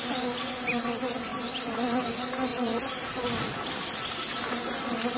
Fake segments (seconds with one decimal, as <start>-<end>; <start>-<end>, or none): none

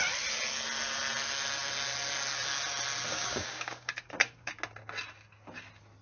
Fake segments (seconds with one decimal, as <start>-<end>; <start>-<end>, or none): 3.1-4.5

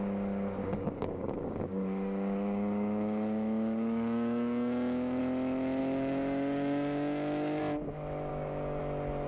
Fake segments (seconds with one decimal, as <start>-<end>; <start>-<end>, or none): 0.6-5.2; 5.8-7.6; 8.3-8.8